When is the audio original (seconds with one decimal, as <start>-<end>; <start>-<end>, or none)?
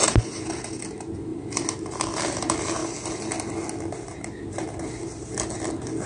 0.0-6.1